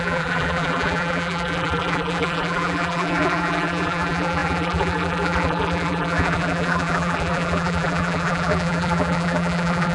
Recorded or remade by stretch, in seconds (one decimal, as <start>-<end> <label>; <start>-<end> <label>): 0.0-9.9 remade